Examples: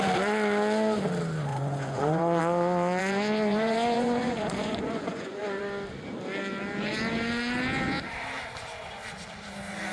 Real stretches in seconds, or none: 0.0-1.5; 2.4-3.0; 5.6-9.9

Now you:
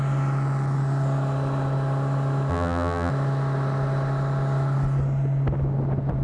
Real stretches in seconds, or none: 0.0-2.5; 3.1-6.2

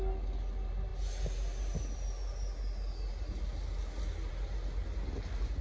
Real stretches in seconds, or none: 0.0-5.6

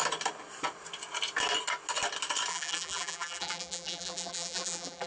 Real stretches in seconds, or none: 0.0-2.5

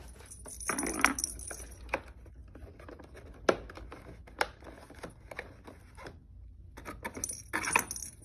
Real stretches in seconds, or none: 0.0-8.2

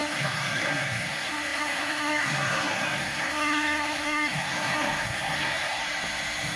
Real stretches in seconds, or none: 5.8-6.6

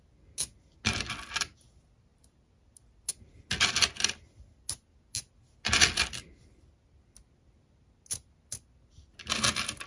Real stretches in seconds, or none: 0.0-9.9